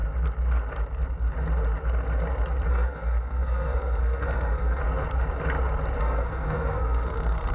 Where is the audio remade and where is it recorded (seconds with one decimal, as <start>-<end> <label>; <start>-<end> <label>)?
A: 0.0-2.7 recorded; 2.7-4.8 remade; 4.8-6.0 recorded; 6.0-7.5 remade